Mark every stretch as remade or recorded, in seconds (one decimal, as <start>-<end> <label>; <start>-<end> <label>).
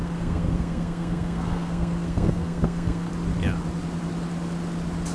0.0-3.1 remade; 3.1-5.1 recorded